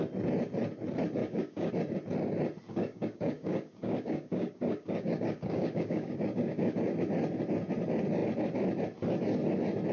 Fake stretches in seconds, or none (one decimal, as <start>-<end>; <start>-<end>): 1.2-1.7; 2.7-6.8

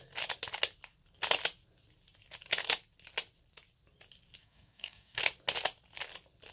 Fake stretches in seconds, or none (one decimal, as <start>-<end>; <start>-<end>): 4.4-5.2